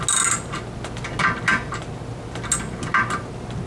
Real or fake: real